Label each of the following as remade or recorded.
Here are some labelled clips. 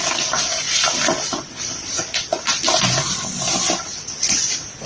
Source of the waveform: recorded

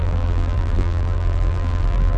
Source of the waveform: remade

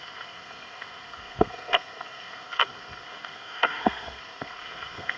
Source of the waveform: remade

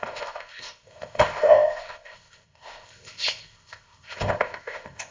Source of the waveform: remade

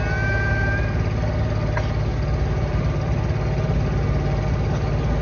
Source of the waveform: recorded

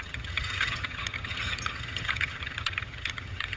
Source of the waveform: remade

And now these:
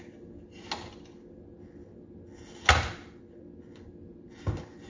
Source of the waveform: recorded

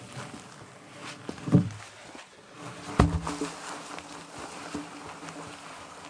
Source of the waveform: recorded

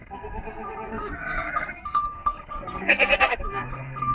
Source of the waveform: remade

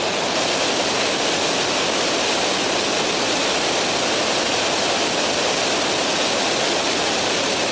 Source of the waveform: recorded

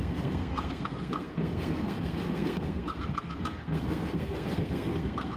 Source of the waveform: remade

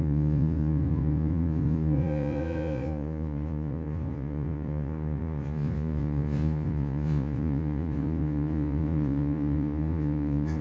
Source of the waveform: remade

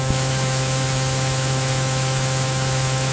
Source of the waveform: remade